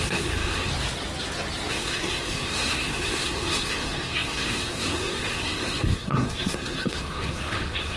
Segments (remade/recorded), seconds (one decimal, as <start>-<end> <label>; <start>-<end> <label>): 0.0-0.7 remade; 0.7-1.7 recorded; 1.7-8.0 remade